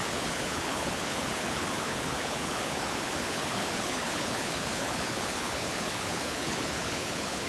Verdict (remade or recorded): remade